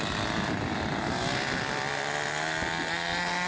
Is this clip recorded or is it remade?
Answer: recorded